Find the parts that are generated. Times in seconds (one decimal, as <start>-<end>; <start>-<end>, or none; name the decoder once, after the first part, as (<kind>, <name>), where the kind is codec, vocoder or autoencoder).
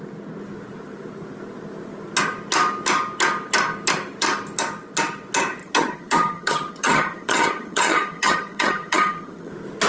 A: 5.6-9.5 (vocoder, HiFi-GAN)